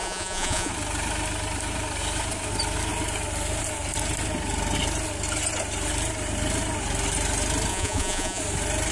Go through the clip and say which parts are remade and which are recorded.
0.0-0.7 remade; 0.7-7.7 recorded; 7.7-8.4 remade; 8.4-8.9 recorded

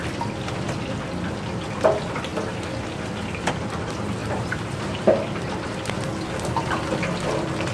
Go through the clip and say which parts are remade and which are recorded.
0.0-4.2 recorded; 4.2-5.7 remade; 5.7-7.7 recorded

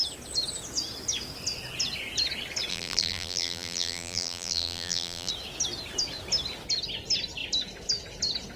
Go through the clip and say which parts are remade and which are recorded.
0.0-2.7 recorded; 2.7-5.3 remade; 5.3-8.6 recorded